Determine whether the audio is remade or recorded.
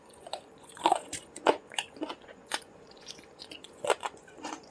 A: remade